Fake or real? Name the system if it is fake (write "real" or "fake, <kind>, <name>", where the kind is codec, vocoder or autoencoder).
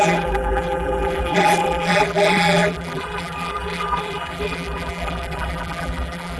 fake, vocoder, BigVGAN v2